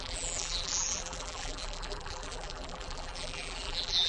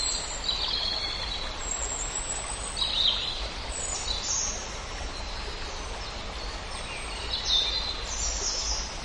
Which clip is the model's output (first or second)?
first